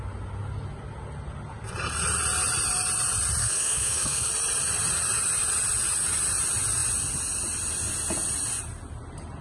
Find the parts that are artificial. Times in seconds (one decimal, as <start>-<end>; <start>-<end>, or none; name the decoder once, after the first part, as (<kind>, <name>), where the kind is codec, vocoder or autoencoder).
3.4-4.3 (codec, SNAC)